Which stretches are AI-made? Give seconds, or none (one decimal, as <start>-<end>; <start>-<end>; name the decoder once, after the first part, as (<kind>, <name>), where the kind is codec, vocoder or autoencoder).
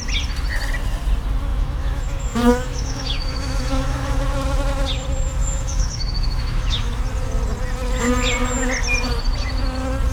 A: 1.5-4.2 (autoencoder, DAC-VAE); 5.4-7.0